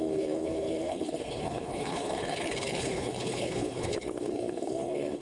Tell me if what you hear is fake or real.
fake